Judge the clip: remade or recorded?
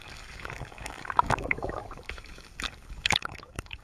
remade